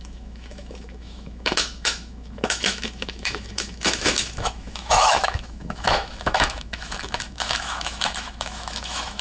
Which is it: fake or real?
fake